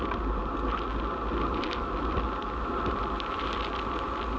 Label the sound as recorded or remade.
recorded